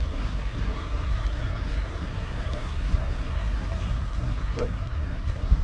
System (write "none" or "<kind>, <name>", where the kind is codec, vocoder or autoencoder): codec, SNAC